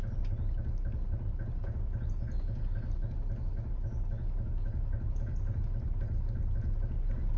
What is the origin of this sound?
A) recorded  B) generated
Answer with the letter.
A